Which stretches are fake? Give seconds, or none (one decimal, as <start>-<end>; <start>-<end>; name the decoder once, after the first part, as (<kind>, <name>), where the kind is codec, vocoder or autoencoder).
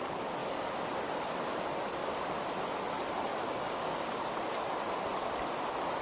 3.3-4.2 (codec, DAC)